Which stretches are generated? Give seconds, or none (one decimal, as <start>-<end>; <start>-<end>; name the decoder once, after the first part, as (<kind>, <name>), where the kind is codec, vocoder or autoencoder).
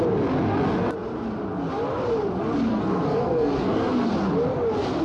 2.7-4.1 (codec, SNAC)